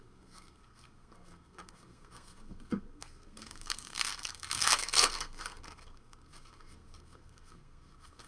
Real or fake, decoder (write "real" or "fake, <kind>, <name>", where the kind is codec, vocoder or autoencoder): fake, codec, SNAC